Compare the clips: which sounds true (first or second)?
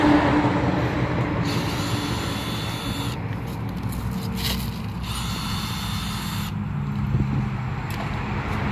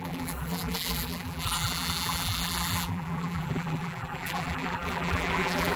first